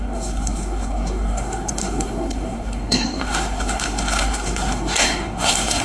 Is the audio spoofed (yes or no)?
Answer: yes